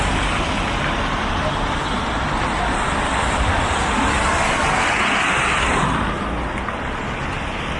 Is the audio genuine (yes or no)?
yes